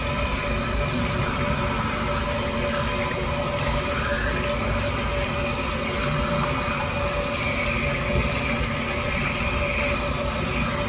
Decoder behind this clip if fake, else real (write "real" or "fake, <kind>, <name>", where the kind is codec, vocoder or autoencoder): real